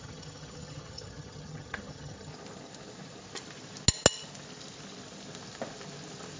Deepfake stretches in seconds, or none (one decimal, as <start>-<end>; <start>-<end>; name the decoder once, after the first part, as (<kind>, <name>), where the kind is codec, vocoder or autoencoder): 0.0-2.3 (vocoder, HiFi-GAN)